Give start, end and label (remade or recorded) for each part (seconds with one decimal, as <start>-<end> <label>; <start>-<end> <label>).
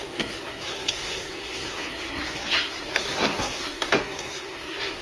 0.0-5.0 remade